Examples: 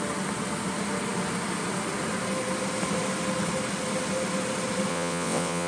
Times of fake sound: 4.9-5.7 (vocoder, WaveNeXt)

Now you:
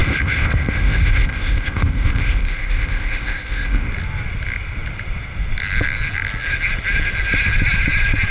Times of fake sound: 0.0-3.9 (codec, ZipCodec)

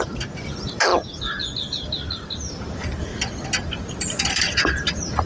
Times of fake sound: 0.0-0.9 (vocoder, BigVGAN v2); 2.5-3.1; 3.6-5.3

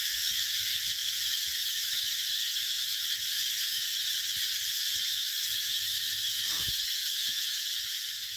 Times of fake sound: 0.0-4.0 (autoencoder, DAC-VAE); 4.7-8.4

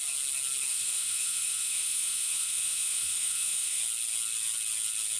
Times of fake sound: 0.7-3.8 (autoencoder, DAC-VAE)

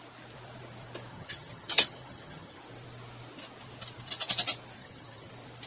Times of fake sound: 1.1-2.6 (vocoder, HiFi-GAN); 4.8-5.3

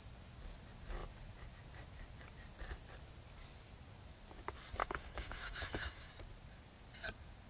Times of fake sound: 4.8-6.1 (codec, DAC)

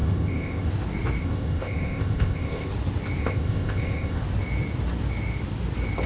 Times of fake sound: 0.0-0.7 (codec, ZipCodec); 1.2-2.7; 3.2-4.2